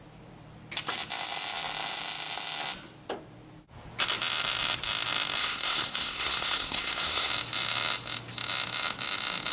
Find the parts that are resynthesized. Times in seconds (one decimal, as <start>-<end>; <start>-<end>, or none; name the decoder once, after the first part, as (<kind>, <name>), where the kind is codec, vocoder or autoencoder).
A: 5.4-7.3 (codec, SNAC)